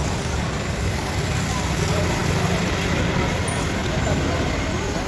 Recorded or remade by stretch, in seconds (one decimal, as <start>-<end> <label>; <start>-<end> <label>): 0.0-1.1 remade; 1.1-5.1 recorded